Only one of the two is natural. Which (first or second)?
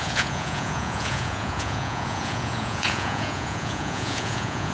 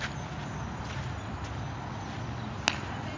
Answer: second